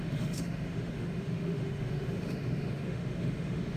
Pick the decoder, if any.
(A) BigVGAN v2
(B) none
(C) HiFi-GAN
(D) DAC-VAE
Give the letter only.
D